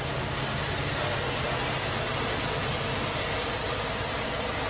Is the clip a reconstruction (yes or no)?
no